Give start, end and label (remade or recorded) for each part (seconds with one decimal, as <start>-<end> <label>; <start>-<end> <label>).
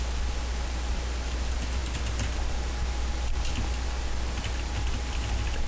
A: 0.0-5.7 recorded